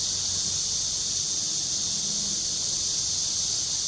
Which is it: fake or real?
real